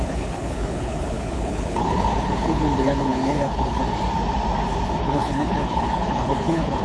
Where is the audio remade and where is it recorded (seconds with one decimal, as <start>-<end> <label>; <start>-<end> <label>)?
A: 0.0-3.8 remade; 3.8-5.0 recorded; 5.0-6.8 remade